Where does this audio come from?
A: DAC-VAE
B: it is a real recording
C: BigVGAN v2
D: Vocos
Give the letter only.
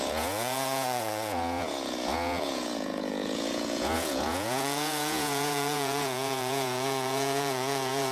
D